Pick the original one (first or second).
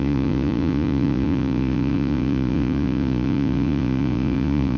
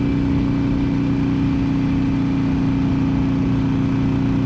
second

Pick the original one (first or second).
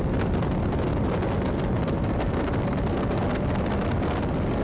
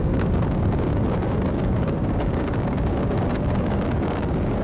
first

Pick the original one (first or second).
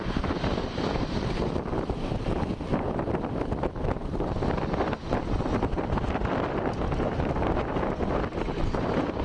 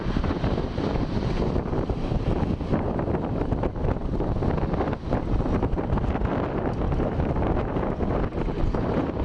second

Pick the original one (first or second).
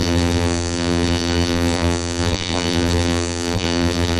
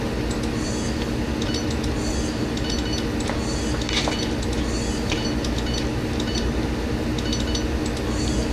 second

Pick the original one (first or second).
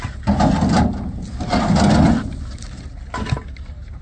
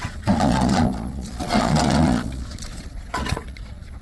first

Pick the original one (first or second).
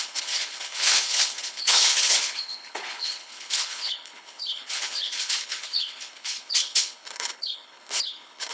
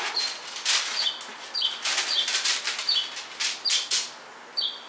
second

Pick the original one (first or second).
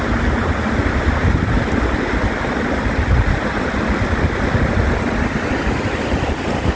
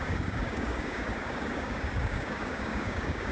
first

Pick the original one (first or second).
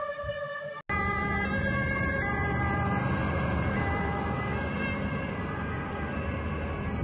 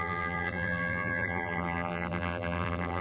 first